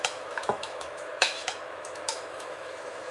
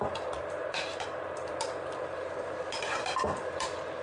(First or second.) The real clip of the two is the second